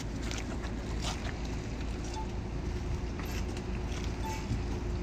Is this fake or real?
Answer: real